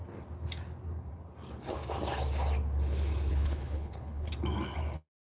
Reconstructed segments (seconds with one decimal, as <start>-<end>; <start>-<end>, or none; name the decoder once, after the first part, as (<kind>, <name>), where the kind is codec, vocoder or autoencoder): 3.3-4.3 (codec, HILCodec)